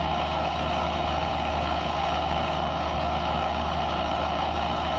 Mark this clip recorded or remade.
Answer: remade